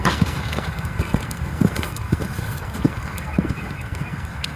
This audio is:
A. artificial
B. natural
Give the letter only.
A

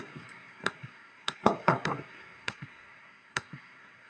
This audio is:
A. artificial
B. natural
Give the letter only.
A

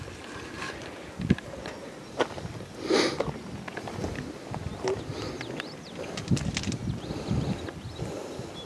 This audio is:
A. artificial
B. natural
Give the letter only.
B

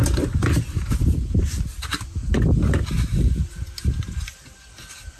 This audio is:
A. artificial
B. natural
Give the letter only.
B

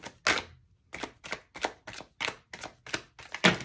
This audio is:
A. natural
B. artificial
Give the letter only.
A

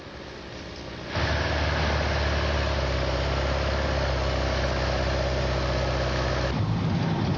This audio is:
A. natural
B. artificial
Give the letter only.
A